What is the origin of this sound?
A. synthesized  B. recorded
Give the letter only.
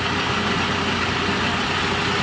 B